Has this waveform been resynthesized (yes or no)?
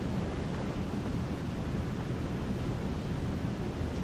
no